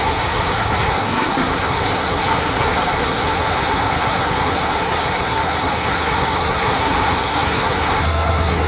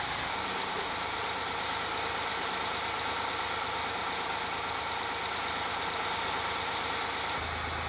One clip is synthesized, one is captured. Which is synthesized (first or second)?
first